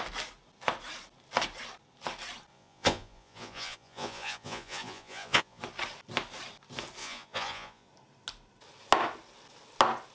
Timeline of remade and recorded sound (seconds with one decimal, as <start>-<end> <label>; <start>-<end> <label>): 0.0-2.5 recorded; 2.5-5.6 remade; 5.6-7.0 recorded; 7.0-7.9 remade; 7.9-10.1 recorded